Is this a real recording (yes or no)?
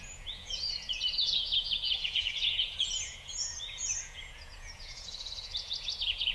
no